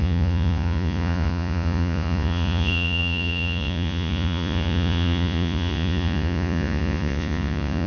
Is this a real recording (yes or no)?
no